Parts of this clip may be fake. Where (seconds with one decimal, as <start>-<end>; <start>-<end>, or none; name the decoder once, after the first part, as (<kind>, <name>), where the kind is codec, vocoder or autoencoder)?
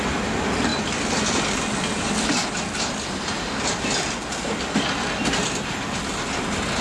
none